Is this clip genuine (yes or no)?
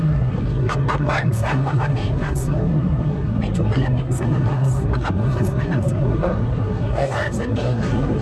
no